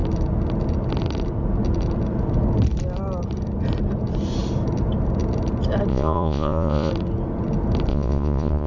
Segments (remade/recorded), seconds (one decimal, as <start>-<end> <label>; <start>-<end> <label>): 0.0-5.9 recorded; 5.9-6.9 remade; 6.9-7.9 recorded; 7.9-8.7 remade